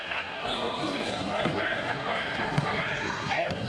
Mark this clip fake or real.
fake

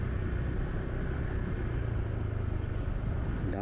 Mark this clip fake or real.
real